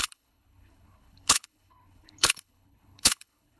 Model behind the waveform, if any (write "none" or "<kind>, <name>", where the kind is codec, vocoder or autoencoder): codec, HILCodec